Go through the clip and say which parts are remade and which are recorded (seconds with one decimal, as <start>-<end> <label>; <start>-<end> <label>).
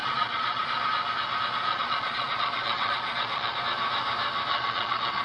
0.0-0.8 remade; 0.8-1.7 recorded; 1.7-3.6 remade; 3.6-4.5 recorded; 4.5-5.2 remade